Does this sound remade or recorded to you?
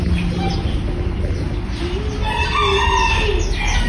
recorded